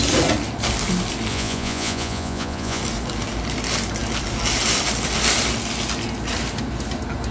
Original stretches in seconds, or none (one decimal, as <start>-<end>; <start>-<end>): 0.0-1.3; 2.8-7.3